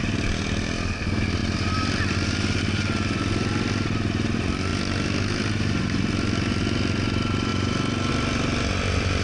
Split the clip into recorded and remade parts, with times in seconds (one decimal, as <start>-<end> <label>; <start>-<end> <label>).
0.0-9.2 recorded

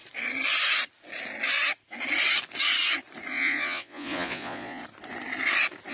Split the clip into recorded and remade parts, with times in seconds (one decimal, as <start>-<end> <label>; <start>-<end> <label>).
0.0-3.3 recorded; 3.3-4.8 remade; 4.8-5.9 recorded

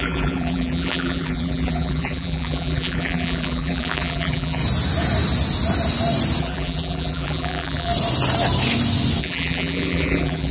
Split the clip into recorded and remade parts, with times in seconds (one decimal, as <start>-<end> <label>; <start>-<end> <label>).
0.0-4.6 remade; 4.6-6.4 recorded; 6.4-7.9 remade; 7.9-9.2 recorded; 9.2-10.5 remade

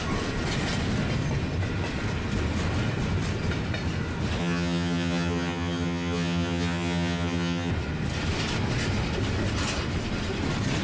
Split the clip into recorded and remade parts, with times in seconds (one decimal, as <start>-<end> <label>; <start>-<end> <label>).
0.0-4.4 recorded; 4.4-7.7 remade; 7.7-10.8 recorded

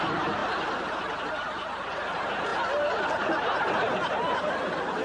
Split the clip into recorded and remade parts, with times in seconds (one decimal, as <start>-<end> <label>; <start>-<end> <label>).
0.0-5.0 recorded